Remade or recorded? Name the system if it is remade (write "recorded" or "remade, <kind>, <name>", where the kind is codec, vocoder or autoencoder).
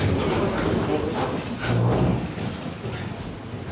recorded